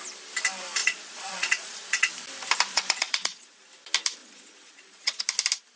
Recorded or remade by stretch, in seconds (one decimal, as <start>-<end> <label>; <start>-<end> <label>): 0.0-0.8 recorded; 0.8-2.1 remade; 2.1-2.7 recorded; 2.7-3.6 remade; 3.6-4.2 recorded; 4.2-5.2 remade; 5.2-5.8 recorded